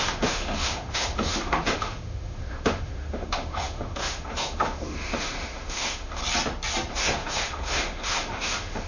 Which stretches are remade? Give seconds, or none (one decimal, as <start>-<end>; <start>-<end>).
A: 0.0-6.2; 6.9-8.9